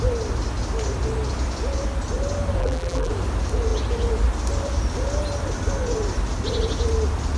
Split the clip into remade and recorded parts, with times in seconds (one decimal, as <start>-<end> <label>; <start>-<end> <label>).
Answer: 0.0-2.6 recorded; 2.6-3.1 remade; 3.1-7.4 recorded